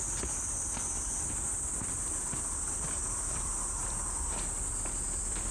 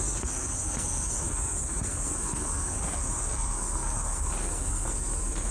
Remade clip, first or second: second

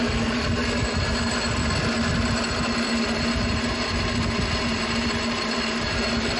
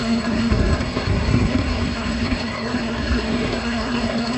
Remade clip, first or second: second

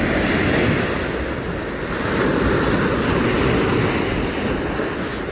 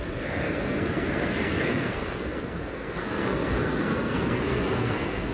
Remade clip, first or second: second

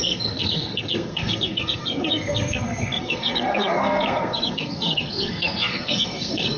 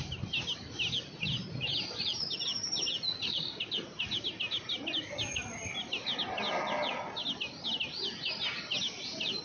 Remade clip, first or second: first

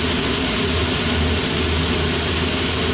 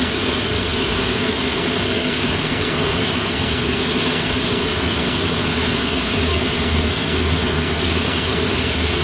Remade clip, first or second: second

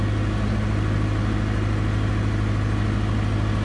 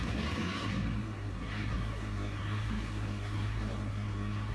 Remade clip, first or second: second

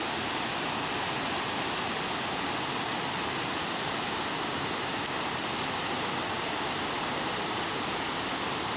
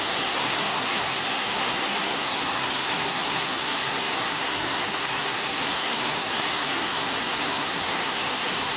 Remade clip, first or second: second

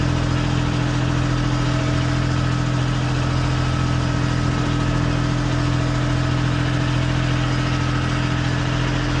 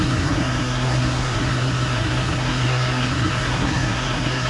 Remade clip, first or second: second